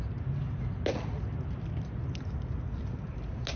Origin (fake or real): real